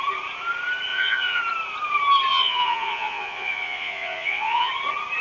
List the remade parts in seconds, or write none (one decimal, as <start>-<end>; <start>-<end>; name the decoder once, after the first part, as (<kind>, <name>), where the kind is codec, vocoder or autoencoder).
0.9-1.4 (vocoder, Vocos); 2.3-4.7